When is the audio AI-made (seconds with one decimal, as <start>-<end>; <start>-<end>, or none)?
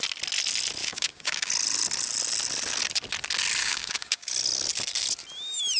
0.8-1.5; 3.6-4.3